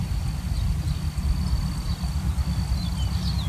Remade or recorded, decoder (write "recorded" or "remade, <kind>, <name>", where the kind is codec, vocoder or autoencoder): recorded